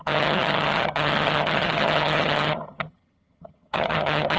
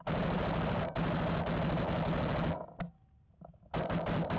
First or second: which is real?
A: second